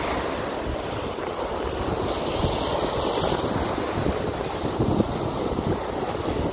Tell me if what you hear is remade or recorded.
recorded